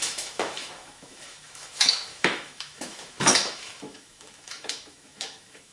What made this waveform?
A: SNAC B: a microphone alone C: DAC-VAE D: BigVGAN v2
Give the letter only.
C